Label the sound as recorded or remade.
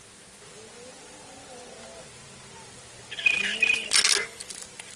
recorded